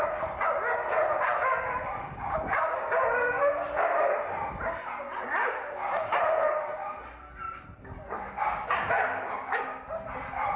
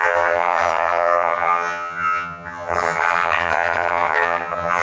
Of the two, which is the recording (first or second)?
first